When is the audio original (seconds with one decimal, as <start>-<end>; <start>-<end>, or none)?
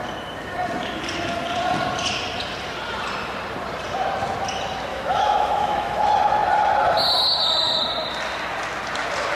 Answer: 0.0-4.9; 6.0-9.3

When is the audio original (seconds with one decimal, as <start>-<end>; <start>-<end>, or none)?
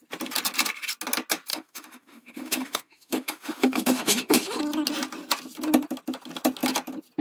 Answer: 0.0-1.5; 4.6-7.2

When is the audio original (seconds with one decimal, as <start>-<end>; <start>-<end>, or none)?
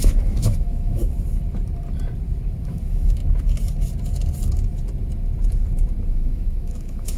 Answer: 1.0-2.6; 3.2-6.1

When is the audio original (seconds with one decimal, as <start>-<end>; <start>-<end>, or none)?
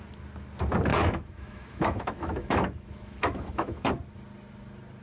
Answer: 0.0-0.9; 3.9-5.0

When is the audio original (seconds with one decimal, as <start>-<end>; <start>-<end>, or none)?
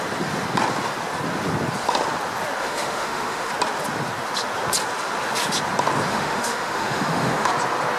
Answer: 0.0-2.6; 3.5-6.1; 7.5-8.0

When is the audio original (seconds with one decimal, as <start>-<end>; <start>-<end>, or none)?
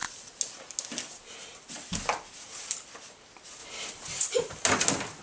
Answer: 0.0-5.2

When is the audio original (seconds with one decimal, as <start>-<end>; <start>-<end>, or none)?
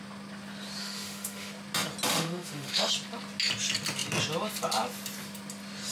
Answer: 0.0-0.8; 1.5-2.1; 2.9-5.9